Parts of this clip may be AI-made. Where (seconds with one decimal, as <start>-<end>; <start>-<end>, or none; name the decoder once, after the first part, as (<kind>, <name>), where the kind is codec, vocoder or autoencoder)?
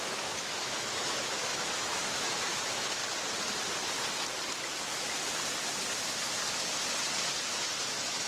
0.0-3.0 (autoencoder, DAC-VAE); 7.8-8.3